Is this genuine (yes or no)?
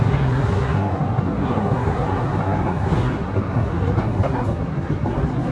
no